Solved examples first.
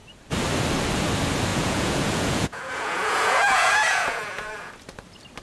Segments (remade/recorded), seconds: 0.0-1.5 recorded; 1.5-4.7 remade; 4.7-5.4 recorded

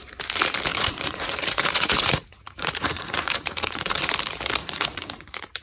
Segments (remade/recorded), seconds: 0.0-0.7 recorded; 0.7-4.1 remade; 4.1-4.6 recorded; 4.6-5.6 remade